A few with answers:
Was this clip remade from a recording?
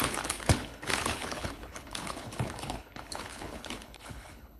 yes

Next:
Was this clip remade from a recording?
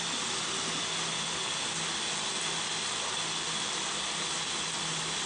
no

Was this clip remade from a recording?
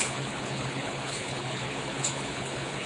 yes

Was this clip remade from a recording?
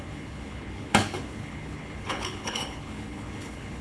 yes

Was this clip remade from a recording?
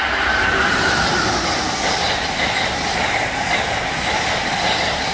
no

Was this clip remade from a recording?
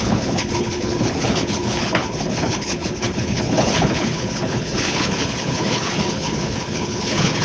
yes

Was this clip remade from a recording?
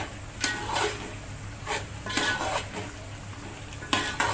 no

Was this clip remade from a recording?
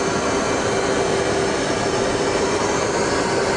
no